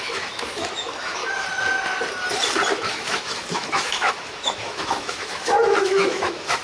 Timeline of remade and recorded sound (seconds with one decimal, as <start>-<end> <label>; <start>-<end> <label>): 0.0-1.2 remade; 1.2-2.8 recorded; 2.8-6.6 remade